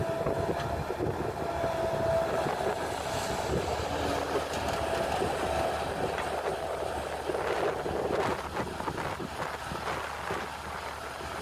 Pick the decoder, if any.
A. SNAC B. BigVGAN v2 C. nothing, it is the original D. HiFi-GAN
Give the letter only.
C